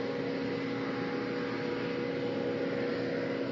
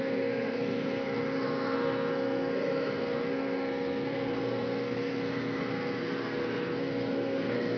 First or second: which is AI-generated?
second